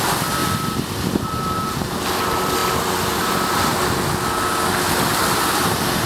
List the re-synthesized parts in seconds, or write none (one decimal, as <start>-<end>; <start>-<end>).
none